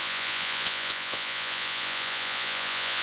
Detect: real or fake fake